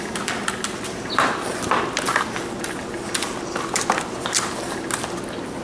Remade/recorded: recorded